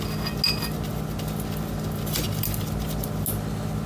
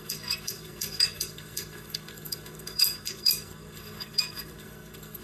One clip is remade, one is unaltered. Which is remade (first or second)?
second